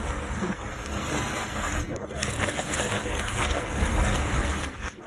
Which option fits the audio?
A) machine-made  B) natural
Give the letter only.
A